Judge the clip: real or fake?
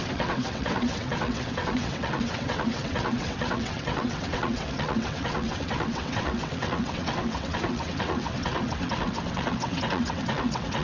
fake